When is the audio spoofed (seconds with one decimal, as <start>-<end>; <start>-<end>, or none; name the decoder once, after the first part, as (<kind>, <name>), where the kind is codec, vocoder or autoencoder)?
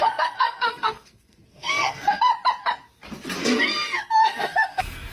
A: 0.0-2.3 (codec, SNAC); 3.4-5.1